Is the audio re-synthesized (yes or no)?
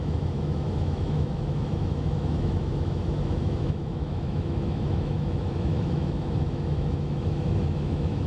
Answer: yes